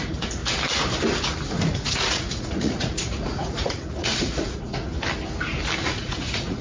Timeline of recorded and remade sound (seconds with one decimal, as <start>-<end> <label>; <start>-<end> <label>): 0.0-0.4 remade; 0.4-1.6 recorded; 1.6-4.9 remade; 4.9-5.8 recorded; 5.8-6.6 remade